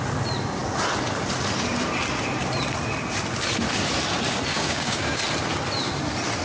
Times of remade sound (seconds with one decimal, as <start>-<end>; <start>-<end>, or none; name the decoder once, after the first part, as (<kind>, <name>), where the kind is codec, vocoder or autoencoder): 4.5-5.2 (codec, DAC)